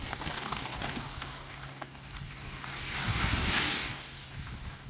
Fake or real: fake